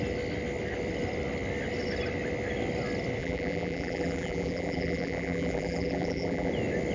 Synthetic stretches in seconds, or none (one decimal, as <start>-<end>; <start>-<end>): 3.2-6.5